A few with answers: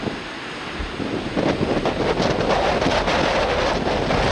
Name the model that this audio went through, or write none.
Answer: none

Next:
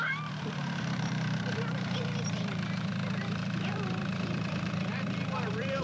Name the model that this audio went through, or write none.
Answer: vocoder, BigVGAN v2